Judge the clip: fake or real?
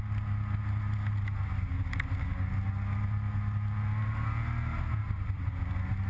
real